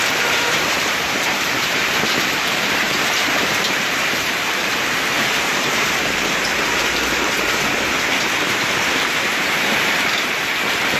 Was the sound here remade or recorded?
remade